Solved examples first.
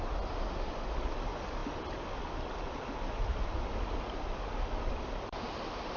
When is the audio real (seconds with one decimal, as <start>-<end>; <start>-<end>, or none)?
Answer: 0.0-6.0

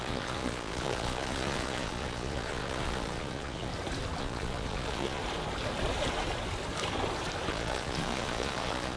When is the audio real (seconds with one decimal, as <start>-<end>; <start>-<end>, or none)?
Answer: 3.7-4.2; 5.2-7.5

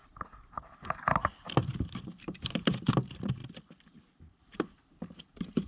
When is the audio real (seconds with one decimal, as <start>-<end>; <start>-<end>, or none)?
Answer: 0.0-1.8; 3.4-4.4

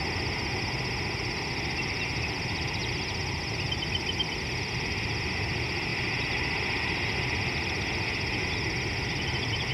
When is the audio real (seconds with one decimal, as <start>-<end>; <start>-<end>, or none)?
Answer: 0.0-9.7

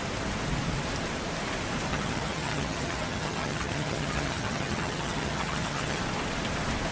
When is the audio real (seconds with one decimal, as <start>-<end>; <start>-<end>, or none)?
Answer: 0.0-1.9; 6.0-6.9

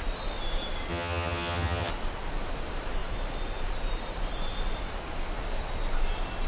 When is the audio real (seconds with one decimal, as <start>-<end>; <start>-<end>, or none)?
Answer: 0.0-0.9; 1.9-6.5

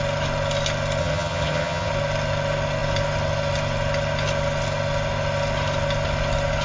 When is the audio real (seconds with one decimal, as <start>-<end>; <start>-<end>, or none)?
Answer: 0.0-1.0; 1.9-6.6